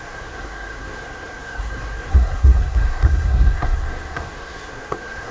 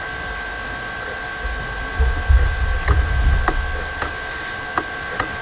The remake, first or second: first